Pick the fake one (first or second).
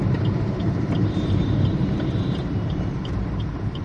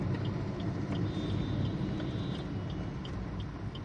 first